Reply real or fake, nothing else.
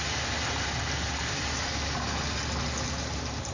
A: real